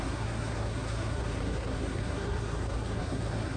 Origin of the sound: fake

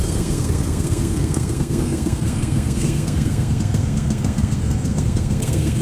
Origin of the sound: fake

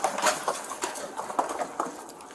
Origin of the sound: real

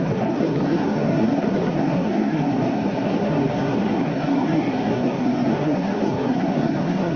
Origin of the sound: fake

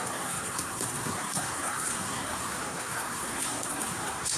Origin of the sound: fake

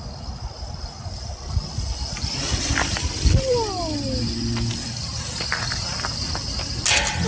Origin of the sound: real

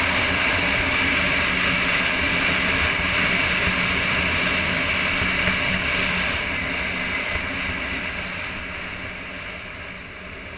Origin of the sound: real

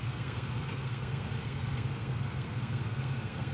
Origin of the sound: fake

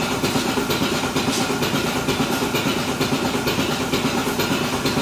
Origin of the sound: real